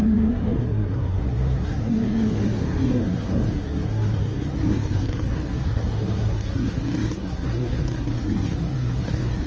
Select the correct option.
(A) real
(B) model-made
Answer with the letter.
B